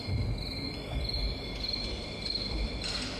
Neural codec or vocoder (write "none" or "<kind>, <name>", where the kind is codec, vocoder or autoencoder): none